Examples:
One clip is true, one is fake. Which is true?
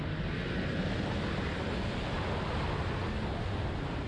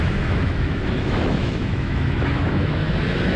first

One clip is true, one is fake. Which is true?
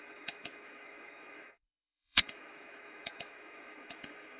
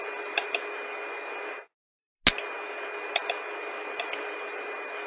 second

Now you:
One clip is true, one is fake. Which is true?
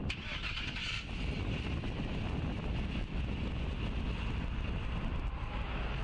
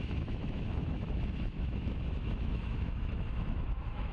first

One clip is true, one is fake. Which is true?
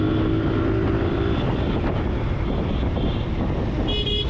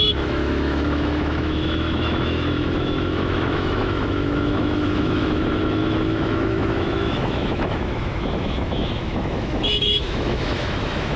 first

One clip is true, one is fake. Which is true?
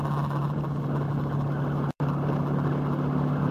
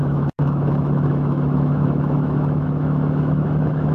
first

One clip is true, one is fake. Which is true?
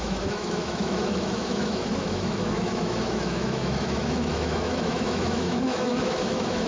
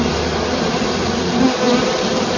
second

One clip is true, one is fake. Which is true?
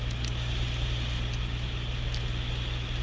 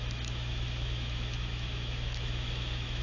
first